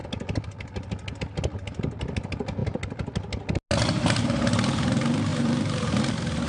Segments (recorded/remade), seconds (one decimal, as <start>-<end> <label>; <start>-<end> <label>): 0.0-5.3 recorded; 5.3-6.0 remade; 6.0-6.5 recorded